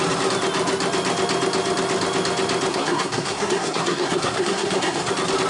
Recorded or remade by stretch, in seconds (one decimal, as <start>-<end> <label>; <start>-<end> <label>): 0.0-2.7 recorded; 2.7-5.1 remade; 5.1-5.5 recorded